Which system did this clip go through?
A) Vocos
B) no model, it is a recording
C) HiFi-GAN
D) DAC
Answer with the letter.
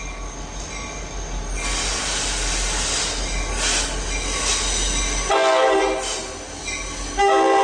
B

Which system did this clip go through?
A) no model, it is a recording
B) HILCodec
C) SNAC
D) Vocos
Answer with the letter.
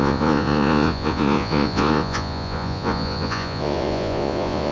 D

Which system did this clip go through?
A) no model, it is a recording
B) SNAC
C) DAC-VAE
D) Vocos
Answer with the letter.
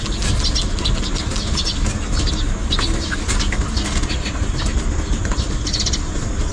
A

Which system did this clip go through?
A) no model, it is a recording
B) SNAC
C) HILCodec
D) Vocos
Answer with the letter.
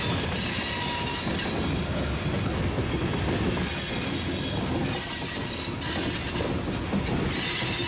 A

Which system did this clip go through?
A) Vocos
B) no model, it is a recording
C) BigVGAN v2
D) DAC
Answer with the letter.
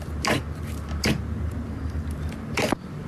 B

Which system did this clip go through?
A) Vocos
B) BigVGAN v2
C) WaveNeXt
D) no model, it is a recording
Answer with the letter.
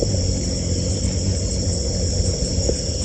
D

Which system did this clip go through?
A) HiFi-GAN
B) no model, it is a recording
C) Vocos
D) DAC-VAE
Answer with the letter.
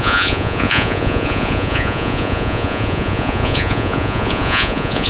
C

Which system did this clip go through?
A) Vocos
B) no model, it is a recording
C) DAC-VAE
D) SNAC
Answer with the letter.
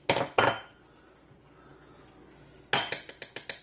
B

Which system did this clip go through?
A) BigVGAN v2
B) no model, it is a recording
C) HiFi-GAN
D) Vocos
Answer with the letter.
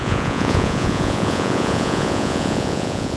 D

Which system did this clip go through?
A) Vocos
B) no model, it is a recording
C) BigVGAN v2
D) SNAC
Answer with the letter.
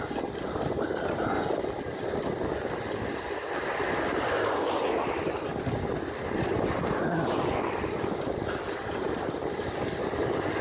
B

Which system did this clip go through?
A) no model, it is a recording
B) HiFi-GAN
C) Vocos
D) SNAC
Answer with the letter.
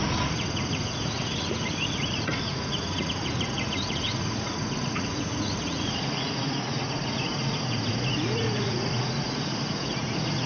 C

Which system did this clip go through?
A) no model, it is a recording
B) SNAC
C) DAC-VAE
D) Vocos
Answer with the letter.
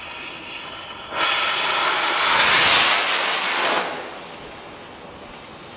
A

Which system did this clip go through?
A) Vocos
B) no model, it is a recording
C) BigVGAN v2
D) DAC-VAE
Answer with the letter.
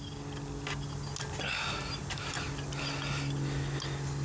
B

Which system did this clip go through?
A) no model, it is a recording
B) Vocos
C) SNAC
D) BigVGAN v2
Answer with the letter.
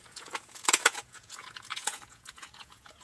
B